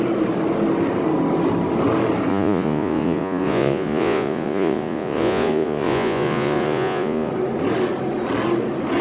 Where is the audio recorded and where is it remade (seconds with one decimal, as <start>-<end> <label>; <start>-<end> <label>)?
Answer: 0.0-2.3 recorded; 2.3-7.3 remade; 7.3-9.0 recorded